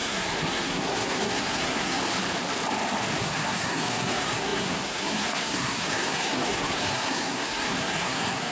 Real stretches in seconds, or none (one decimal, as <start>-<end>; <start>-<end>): 2.0-3.2